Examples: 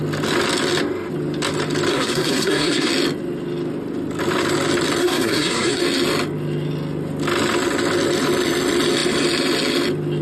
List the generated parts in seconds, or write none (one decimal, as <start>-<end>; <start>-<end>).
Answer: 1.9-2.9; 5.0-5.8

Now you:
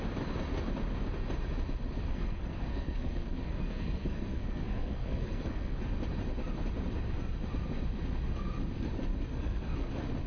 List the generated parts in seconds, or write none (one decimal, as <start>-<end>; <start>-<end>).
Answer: 2.1-5.8; 9.3-9.9

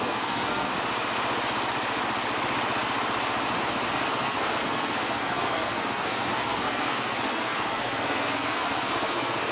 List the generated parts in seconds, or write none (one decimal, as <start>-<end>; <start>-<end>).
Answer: 0.0-0.7; 3.9-9.5

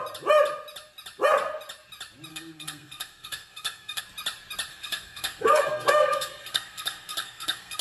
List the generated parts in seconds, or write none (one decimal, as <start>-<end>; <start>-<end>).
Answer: 2.3-4.0; 4.7-7.8